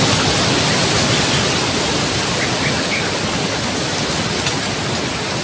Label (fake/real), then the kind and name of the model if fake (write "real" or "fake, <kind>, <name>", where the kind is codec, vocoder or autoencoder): real